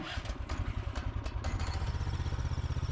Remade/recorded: recorded